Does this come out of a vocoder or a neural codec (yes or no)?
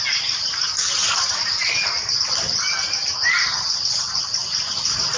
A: no